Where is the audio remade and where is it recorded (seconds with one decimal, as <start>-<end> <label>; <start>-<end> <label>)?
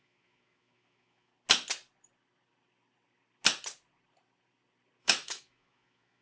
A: 0.0-1.3 remade; 1.3-5.0 recorded; 5.0-6.2 remade